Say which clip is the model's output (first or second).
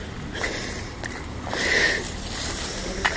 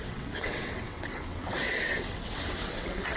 second